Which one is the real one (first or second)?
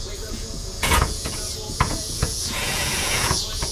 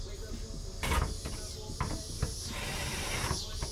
second